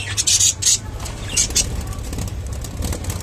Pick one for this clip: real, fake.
real